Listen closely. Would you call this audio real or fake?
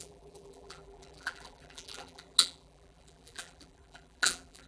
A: fake